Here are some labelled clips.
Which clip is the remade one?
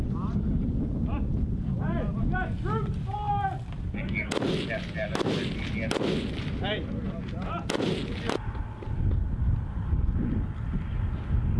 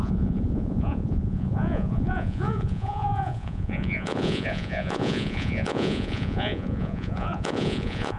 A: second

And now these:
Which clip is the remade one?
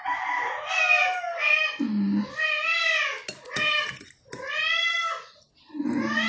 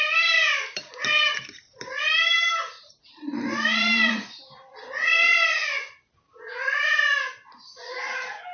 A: second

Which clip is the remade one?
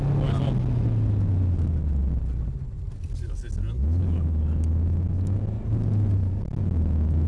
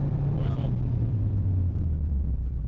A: second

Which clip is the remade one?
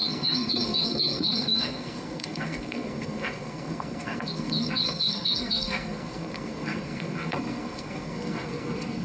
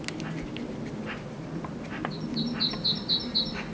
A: first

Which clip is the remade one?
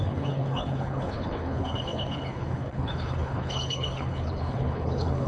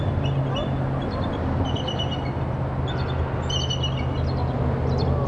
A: first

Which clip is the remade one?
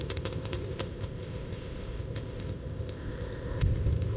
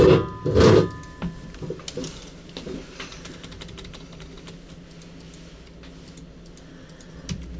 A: first